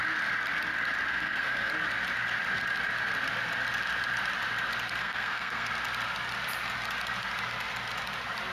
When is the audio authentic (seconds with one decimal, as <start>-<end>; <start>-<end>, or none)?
0.0-1.1; 1.7-5.0; 5.7-8.5

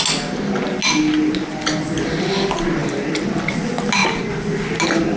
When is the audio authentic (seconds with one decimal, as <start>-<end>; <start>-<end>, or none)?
0.0-5.2

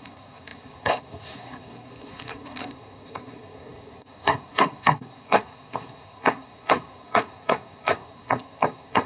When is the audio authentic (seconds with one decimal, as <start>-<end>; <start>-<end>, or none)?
none

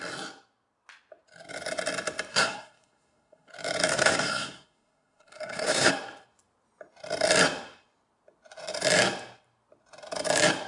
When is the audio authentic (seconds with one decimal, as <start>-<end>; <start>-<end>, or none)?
0.0-2.3; 3.5-3.9; 5.9-10.7

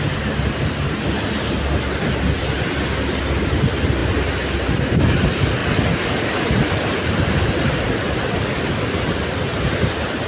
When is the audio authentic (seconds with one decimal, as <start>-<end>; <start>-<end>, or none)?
0.0-10.3

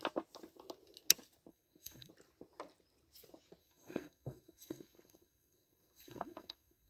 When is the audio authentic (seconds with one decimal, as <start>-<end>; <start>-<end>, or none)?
0.0-1.5; 2.1-3.6

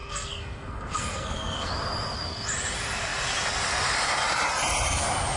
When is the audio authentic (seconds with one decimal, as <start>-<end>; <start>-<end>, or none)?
1.7-5.4

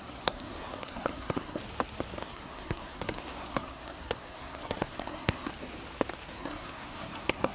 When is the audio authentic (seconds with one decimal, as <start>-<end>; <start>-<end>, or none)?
1.6-2.2; 5.5-6.3